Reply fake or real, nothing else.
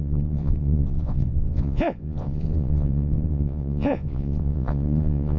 fake